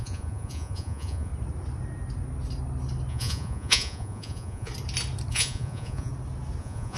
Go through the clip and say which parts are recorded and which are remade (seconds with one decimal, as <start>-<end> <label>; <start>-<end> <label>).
0.0-1.3 remade; 1.3-3.1 recorded; 3.1-4.7 remade; 4.7-5.3 recorded; 5.3-6.1 remade; 6.1-6.6 recorded; 6.6-7.0 remade